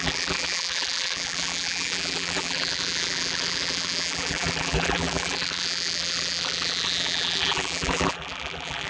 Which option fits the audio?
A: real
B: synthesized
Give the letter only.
B